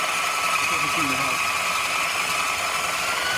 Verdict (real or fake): real